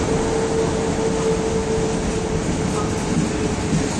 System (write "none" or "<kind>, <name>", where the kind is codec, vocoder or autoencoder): none